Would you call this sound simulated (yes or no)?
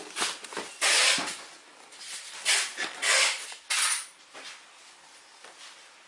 no